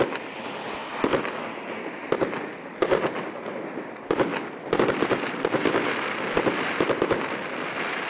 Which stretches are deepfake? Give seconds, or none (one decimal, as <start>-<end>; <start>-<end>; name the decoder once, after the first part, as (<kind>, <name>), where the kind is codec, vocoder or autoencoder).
none